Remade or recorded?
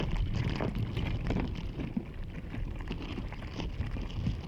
recorded